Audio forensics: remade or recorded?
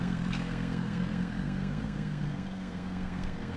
remade